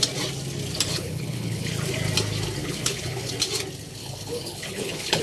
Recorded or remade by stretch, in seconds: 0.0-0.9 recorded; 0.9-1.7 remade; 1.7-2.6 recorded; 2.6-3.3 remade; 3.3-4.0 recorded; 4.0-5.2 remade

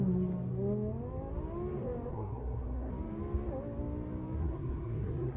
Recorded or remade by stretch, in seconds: 0.0-2.1 recorded; 2.1-2.9 remade; 2.9-4.4 recorded; 4.4-5.4 remade

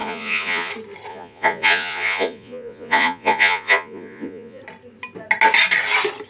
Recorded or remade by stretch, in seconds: 0.0-0.7 remade; 0.7-1.1 recorded; 1.1-4.6 remade; 4.6-6.3 recorded

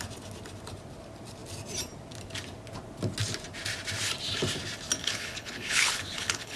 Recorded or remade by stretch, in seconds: 0.0-5.0 recorded; 5.0-6.6 remade

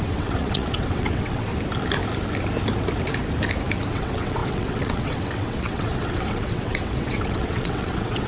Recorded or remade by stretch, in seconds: 0.0-1.5 remade; 1.5-3.9 recorded; 3.9-8.3 remade

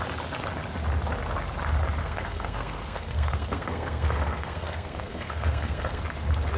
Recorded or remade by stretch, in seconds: 0.0-2.0 recorded; 2.0-6.0 remade; 6.0-6.6 recorded

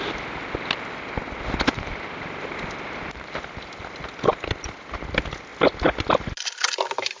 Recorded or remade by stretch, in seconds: 0.0-7.2 recorded

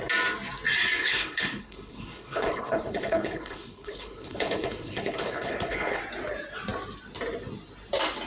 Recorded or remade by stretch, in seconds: 0.0-1.0 recorded; 1.0-6.0 remade; 6.0-8.3 recorded